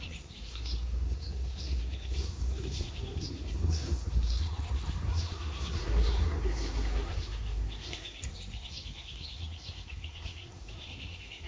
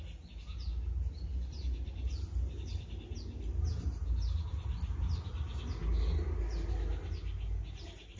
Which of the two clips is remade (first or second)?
first